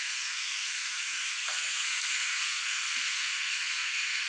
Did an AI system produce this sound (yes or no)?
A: yes